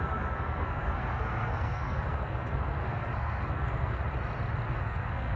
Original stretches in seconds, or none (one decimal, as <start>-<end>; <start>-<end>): 4.0-4.7